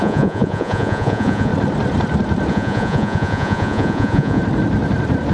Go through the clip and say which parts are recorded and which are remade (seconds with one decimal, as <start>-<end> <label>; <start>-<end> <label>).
0.0-1.5 remade; 1.5-2.5 recorded; 2.5-4.4 remade; 4.4-5.3 recorded

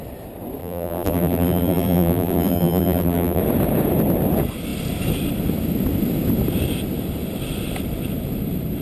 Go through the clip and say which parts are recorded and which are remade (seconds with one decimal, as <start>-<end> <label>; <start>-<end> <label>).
0.0-0.6 recorded; 0.6-3.4 remade; 3.4-8.8 recorded